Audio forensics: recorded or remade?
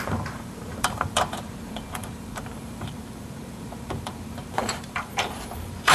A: remade